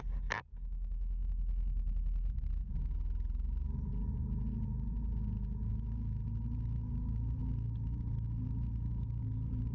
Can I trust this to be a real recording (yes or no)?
yes